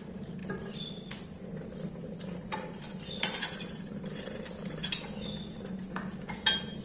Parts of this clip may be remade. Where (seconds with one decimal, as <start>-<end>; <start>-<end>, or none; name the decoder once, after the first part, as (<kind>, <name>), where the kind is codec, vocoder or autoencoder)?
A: 2.0-2.8 (vocoder, Vocos)